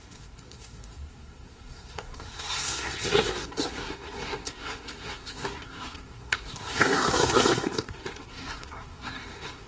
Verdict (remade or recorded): remade